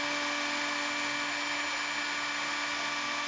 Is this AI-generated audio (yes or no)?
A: no